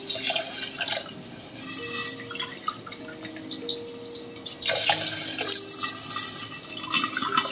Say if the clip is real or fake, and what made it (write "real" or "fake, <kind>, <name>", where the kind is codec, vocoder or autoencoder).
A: real